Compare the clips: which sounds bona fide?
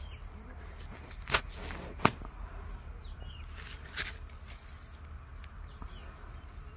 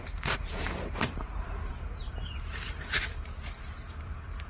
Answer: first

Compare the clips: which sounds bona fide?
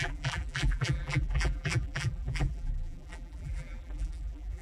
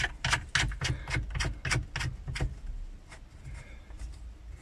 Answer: second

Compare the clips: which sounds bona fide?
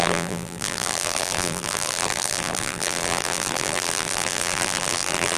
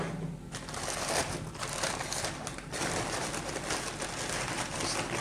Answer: second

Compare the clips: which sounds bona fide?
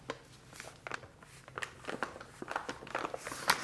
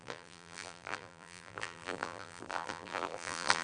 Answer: first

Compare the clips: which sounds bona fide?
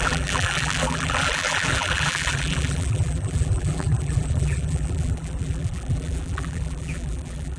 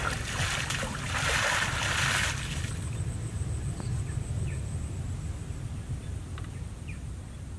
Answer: second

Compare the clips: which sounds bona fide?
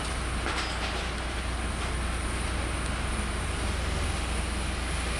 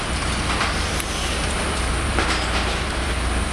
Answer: first